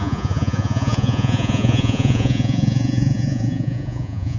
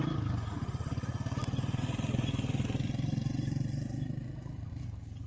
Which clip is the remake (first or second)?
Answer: first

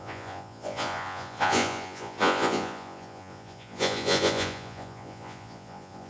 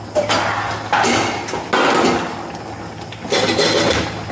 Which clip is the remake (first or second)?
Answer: first